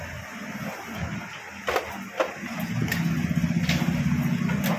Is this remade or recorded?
recorded